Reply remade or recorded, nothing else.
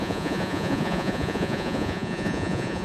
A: remade